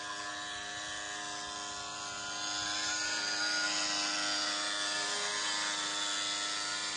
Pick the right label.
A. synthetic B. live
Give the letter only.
B